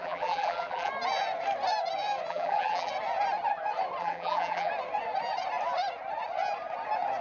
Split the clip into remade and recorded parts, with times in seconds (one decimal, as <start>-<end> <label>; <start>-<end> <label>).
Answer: 0.0-0.9 remade; 0.9-2.3 recorded; 2.3-2.9 remade; 2.9-4.0 recorded; 4.0-4.7 remade; 4.7-7.2 recorded

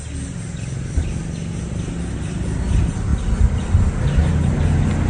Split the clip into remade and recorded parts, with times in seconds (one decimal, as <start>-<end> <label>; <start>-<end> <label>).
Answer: 0.0-5.1 recorded